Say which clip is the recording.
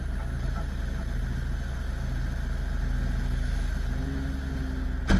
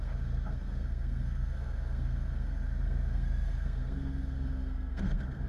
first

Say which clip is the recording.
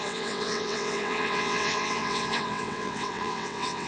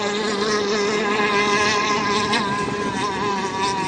second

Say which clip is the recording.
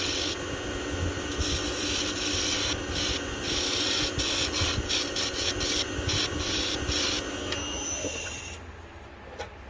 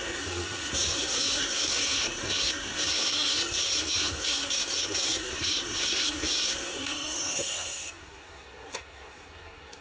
first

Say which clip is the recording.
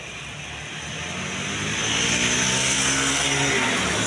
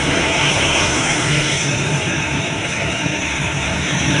first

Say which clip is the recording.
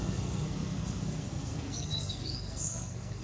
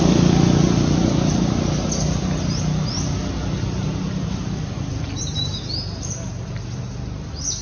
second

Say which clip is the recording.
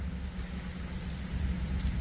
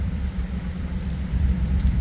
first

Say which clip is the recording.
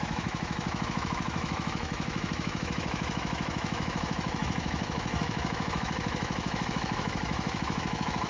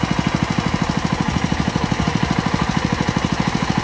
second